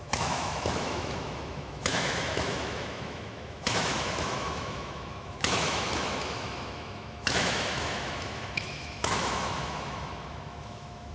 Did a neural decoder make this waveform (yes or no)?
yes